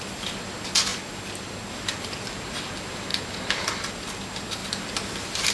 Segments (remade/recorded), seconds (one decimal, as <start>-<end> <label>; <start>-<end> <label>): 0.0-5.5 recorded